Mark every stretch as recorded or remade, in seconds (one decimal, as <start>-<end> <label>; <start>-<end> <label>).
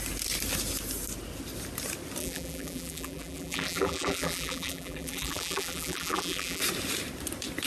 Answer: 0.0-2.2 recorded; 2.2-6.6 remade; 6.6-7.7 recorded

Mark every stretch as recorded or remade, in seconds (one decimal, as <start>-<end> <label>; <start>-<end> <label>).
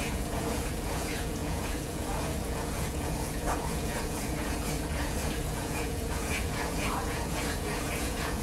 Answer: 0.0-8.4 remade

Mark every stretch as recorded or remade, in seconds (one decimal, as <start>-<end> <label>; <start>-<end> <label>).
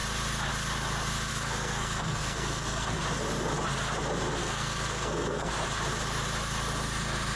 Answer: 0.0-1.3 recorded; 1.3-3.0 remade; 3.0-4.4 recorded; 4.4-5.5 remade; 5.5-7.4 recorded